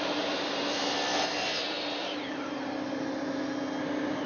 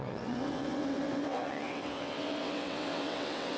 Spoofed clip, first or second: second